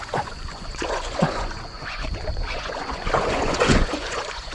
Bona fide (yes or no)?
no